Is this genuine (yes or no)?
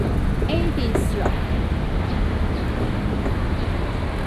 yes